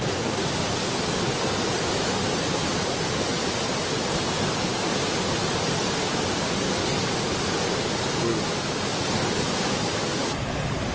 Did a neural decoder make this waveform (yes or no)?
no